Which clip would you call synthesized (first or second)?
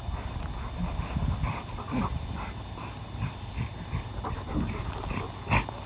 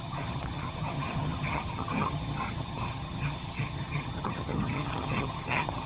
second